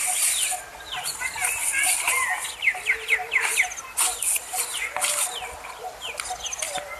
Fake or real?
real